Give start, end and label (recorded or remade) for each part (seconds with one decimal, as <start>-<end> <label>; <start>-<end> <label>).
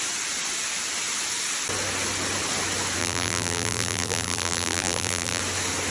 0.0-3.0 recorded; 3.0-5.4 remade; 5.4-5.9 recorded